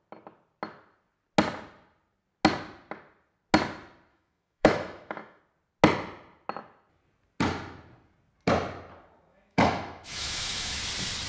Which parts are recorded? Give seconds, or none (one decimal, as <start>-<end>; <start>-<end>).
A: 0.0-4.1; 5.4-9.3; 10.8-11.3